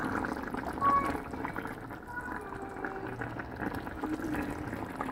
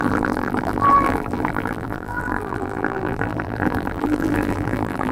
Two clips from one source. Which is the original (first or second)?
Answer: first